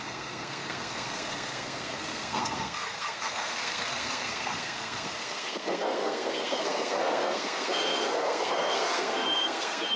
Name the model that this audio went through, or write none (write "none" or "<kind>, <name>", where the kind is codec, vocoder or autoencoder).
codec, SNAC